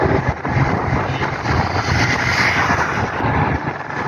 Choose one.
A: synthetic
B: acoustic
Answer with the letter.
B